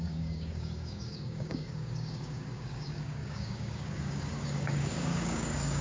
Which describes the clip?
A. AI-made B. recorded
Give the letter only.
A